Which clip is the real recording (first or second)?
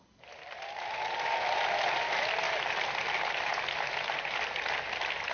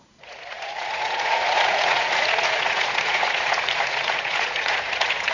first